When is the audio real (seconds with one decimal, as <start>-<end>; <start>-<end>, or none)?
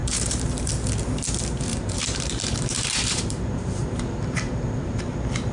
0.7-1.7; 5.0-5.5